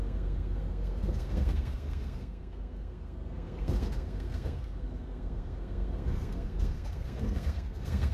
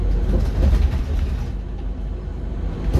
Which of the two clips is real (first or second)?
second